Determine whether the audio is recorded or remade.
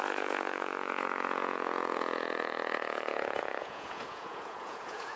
remade